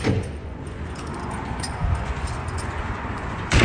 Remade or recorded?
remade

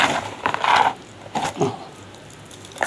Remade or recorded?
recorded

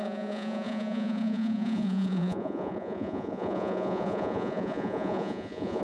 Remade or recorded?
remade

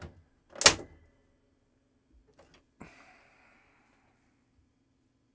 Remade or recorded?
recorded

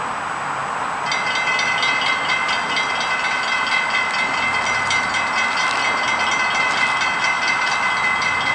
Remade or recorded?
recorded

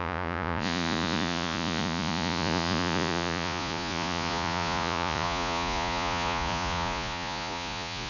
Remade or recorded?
remade